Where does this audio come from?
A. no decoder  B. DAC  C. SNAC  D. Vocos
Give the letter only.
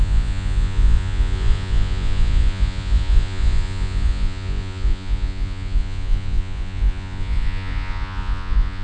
D